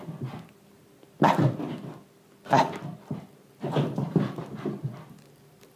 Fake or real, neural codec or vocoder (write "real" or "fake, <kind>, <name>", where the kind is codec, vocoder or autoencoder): real